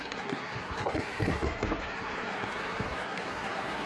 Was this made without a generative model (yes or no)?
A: no